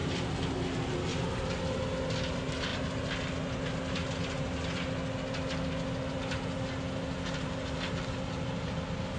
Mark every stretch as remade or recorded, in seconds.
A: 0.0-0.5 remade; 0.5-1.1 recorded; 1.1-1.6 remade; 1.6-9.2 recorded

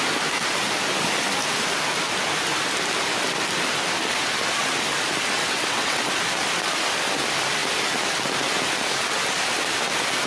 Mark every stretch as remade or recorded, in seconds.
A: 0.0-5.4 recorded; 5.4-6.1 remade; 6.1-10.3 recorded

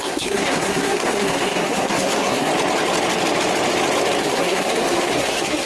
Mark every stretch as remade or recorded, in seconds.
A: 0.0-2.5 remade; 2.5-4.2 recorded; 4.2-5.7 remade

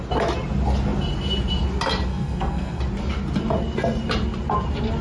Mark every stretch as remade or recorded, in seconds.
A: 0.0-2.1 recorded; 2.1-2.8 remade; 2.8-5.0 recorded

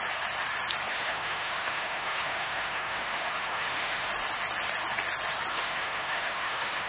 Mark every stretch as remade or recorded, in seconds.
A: 0.0-0.9 recorded; 0.9-4.1 remade; 4.1-5.5 recorded; 5.5-6.9 remade

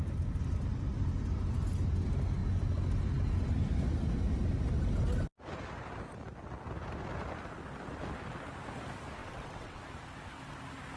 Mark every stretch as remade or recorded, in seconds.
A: 0.0-9.2 recorded; 9.2-9.8 remade; 9.8-11.0 recorded

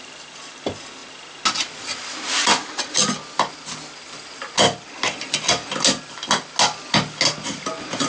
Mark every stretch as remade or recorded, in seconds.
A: 0.0-8.1 recorded

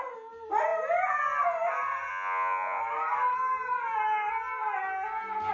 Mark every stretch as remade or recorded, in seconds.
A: 0.0-2.1 recorded; 2.1-2.8 remade; 2.8-5.5 recorded